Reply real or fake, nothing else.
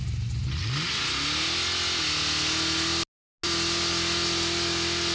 real